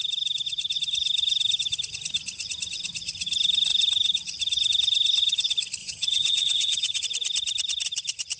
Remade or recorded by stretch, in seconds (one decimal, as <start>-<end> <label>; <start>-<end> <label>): 0.0-5.8 recorded; 5.8-7.0 remade; 7.0-8.4 recorded